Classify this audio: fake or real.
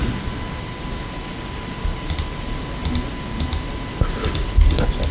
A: real